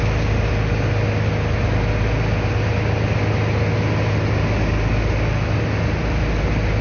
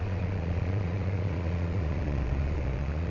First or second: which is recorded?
first